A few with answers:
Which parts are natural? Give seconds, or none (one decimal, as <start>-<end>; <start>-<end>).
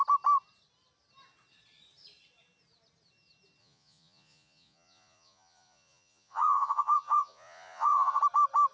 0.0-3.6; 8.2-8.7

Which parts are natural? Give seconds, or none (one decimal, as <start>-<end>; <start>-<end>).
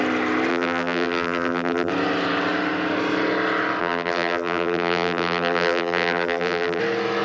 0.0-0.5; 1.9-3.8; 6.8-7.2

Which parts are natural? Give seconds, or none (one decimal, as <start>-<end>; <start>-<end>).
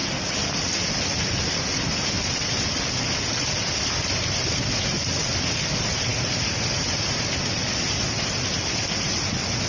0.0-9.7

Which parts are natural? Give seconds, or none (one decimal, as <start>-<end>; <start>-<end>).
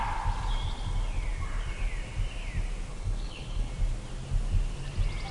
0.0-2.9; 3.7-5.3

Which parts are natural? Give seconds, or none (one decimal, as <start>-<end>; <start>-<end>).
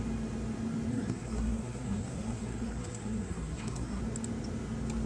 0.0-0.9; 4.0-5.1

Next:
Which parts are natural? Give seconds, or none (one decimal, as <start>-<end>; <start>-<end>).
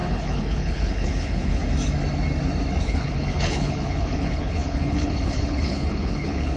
1.6-2.8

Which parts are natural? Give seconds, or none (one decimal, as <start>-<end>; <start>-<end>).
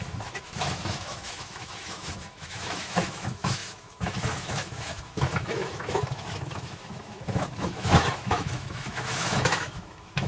none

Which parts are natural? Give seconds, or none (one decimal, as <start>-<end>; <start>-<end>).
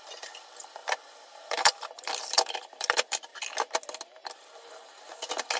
3.3-5.6